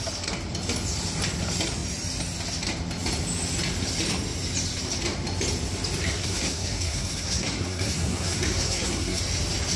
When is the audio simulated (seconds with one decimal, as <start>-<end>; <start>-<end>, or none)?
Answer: 6.0-9.2